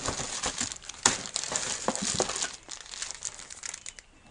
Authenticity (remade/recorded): recorded